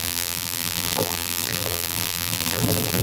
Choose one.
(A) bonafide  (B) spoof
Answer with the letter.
B